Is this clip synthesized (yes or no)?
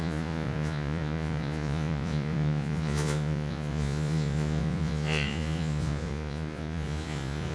yes